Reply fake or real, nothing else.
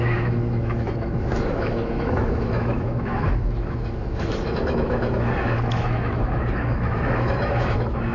fake